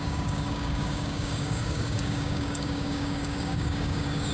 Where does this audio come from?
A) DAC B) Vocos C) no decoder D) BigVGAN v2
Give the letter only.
A